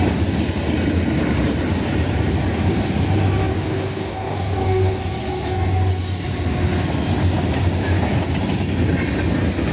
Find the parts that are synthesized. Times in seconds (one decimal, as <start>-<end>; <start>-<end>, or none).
3.5-5.0